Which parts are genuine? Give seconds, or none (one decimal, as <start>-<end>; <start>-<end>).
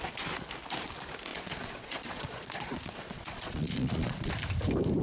0.0-1.3; 4.3-5.0